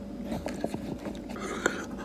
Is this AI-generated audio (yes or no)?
no